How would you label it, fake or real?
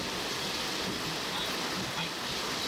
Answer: real